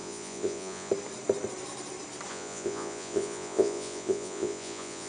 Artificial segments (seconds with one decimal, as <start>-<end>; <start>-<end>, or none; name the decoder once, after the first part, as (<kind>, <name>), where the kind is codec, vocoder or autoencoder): 0.0-0.9 (vocoder, Vocos); 2.3-5.1